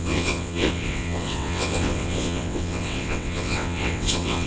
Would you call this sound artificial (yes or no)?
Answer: yes